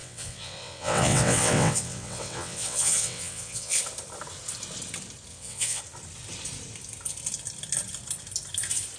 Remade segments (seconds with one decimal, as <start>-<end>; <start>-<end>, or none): 0.0-3.8; 5.3-5.8